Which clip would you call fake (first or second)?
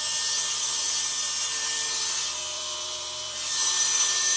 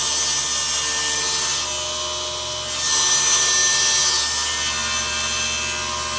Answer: first